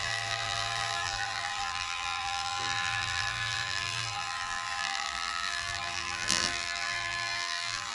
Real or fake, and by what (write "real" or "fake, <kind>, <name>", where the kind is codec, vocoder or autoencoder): fake, vocoder, BigVGAN v2